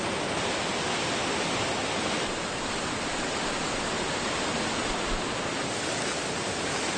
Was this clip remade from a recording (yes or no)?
no